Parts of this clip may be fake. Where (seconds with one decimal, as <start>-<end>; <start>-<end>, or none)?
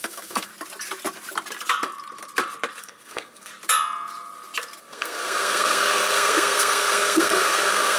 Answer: 0.0-0.5; 2.8-3.5; 4.8-8.0